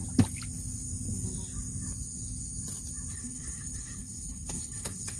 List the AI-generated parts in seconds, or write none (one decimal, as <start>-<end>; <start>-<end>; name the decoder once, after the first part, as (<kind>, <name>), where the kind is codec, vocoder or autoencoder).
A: 3.1-5.2 (codec, HILCodec)